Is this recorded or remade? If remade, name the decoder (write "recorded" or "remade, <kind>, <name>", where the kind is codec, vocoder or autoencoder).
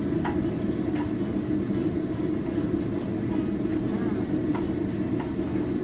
recorded